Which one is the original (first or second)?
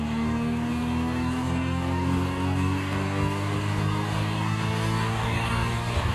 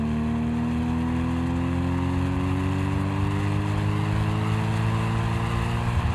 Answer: second